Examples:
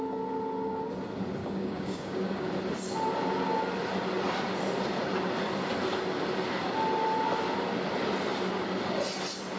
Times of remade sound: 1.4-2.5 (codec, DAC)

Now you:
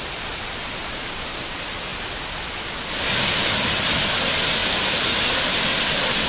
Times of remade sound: none

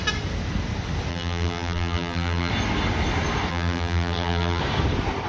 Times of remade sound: 1.1-2.5 (vocoder, BigVGAN v2); 3.5-4.6

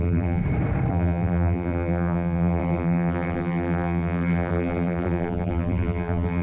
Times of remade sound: 0.0-0.4 (vocoder, BigVGAN v2); 0.9-6.4

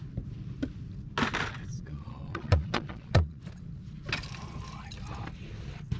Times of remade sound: 1.7-3.4 (vocoder, Vocos)

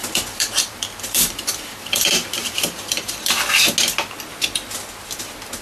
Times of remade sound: 0.0-3.4 (vocoder, BigVGAN v2)

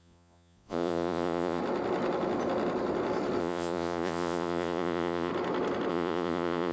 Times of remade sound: 0.0-1.6 (vocoder, Vocos); 3.4-5.3; 5.9-6.7